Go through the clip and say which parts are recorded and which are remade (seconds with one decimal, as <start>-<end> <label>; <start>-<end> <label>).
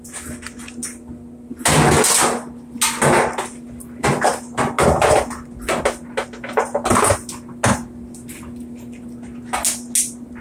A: 0.0-10.4 recorded